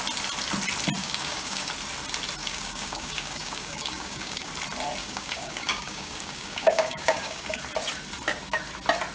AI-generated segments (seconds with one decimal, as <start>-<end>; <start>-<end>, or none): 1.0-1.7; 2.4-4.5; 5.0-7.6